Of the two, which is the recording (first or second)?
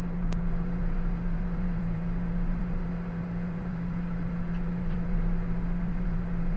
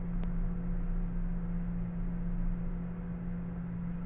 second